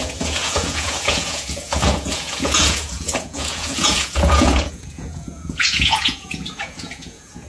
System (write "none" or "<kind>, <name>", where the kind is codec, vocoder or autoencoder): vocoder, Vocos